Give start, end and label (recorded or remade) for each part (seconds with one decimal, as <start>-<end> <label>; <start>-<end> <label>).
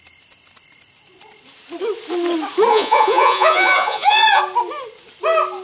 0.0-2.7 recorded; 2.7-4.4 remade; 4.4-5.6 recorded